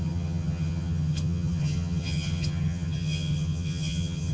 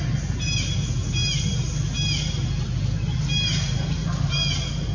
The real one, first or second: second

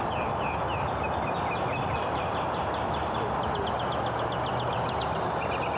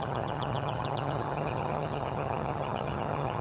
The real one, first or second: first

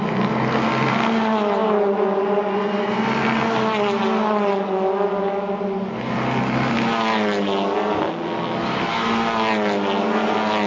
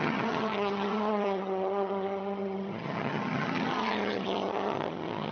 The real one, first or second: first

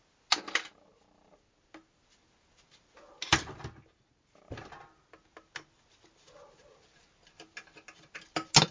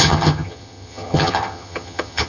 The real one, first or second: first